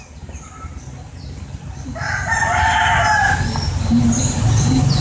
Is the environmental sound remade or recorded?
recorded